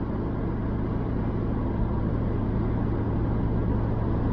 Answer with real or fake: real